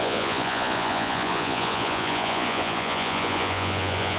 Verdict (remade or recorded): remade